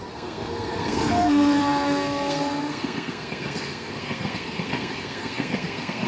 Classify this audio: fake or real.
fake